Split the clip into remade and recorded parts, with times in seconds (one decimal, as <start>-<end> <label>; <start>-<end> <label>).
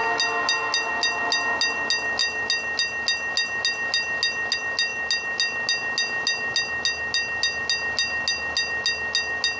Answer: 0.0-9.6 recorded